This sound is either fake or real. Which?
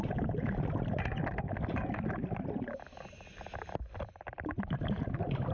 real